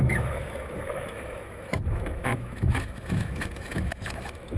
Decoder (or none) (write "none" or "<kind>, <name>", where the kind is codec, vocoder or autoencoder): autoencoder, DAC-VAE